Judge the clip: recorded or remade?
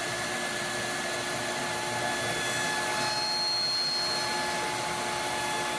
recorded